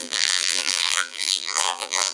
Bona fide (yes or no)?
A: no